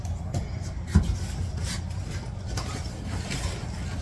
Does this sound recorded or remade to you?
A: recorded